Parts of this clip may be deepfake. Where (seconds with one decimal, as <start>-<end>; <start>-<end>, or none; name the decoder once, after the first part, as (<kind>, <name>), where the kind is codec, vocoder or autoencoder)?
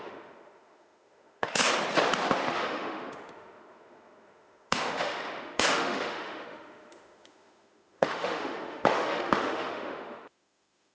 0.0-1.6 (autoencoder, DAC-VAE); 2.5-10.9